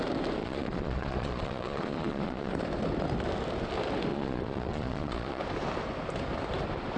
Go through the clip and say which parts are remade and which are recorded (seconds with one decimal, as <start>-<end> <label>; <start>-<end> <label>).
0.0-0.4 recorded; 0.4-2.5 remade; 2.5-4.1 recorded; 4.1-5.4 remade; 5.4-7.0 recorded